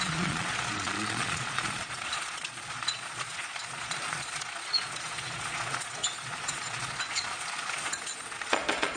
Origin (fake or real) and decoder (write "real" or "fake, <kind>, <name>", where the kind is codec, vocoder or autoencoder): fake, vocoder, Vocos